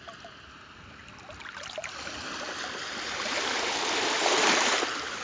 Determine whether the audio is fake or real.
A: real